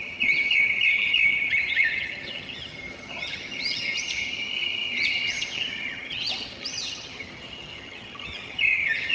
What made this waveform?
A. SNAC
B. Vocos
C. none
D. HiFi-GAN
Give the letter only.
D